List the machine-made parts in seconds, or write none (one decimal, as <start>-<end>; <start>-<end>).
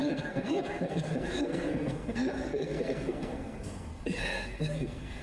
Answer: 0.0-5.2